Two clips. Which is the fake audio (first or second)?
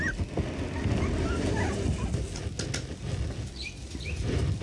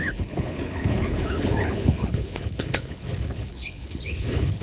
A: second